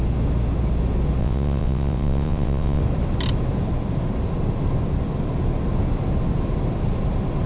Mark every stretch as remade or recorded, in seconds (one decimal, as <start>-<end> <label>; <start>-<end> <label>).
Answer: 0.0-1.2 recorded; 1.2-2.8 remade; 2.8-7.5 recorded